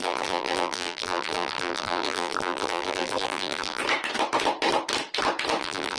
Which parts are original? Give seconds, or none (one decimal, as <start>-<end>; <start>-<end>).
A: 3.8-5.6